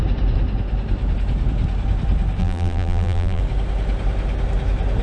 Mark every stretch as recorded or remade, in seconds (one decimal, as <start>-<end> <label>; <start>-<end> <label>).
0.0-2.4 recorded; 2.4-3.4 remade; 3.4-5.0 recorded